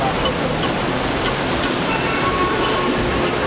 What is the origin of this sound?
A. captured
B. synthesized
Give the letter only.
A